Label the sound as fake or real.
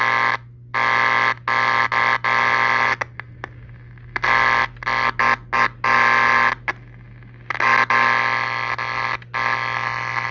real